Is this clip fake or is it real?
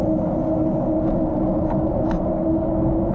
real